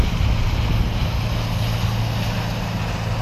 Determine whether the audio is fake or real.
real